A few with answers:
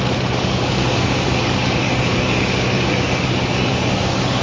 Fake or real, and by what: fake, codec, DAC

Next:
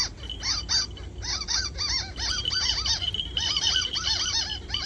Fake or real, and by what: real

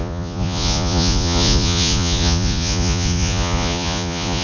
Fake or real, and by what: fake, vocoder, Vocos